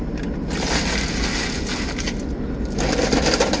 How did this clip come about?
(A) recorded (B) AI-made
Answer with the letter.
A